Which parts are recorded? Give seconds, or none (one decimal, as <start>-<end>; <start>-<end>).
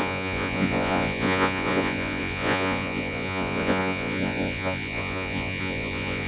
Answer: none